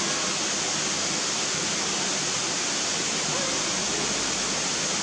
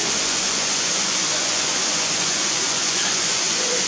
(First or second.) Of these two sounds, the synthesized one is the second